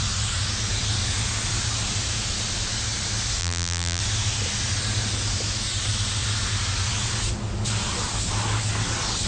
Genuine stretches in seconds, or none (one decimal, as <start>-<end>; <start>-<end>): 0.0-3.4; 4.0-9.3